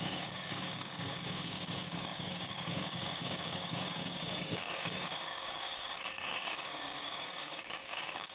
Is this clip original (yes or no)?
no